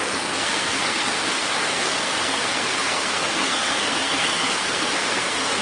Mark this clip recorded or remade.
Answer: remade